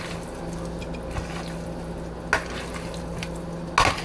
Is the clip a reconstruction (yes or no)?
no